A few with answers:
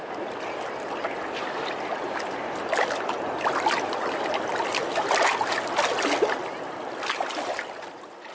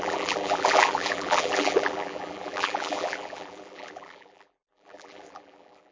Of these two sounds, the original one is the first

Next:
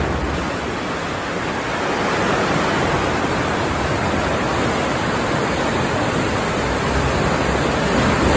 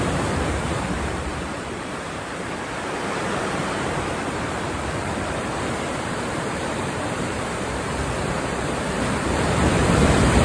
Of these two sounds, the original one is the first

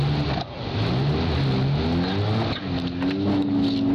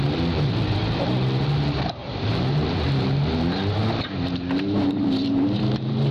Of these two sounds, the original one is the first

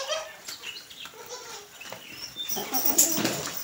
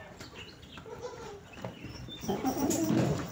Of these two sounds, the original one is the first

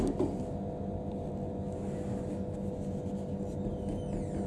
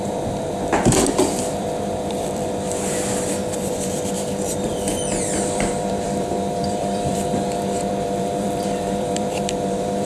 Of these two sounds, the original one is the first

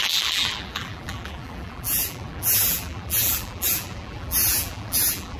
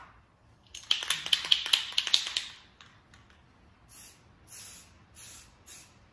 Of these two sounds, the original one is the second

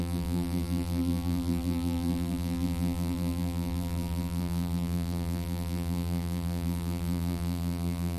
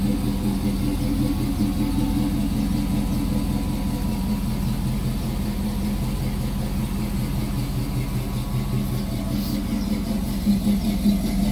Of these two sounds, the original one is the second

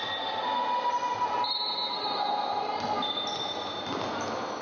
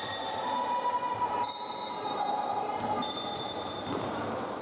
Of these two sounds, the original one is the first